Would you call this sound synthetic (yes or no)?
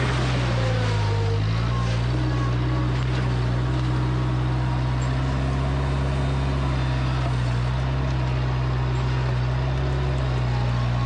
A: no